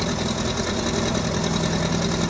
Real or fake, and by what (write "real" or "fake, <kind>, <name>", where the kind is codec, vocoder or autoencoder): real